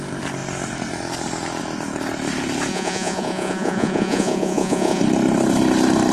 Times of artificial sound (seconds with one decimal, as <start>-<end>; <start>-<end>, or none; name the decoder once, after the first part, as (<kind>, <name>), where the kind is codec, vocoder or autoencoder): 2.7-5.0 (vocoder, Vocos)